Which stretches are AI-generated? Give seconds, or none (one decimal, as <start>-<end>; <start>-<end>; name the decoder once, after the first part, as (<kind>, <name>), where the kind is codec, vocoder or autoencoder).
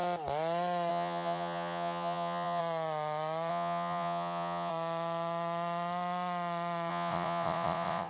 0.9-2.6 (vocoder, Vocos); 3.5-4.7; 6.9-8.1